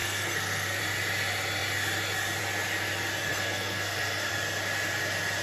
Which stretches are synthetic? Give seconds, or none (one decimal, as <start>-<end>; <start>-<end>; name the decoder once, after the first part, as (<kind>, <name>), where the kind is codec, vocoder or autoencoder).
0.0-0.8 (codec, SNAC); 3.3-4.3